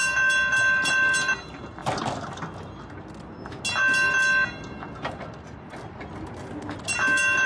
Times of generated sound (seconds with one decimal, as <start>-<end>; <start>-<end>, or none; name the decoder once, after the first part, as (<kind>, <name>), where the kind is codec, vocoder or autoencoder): none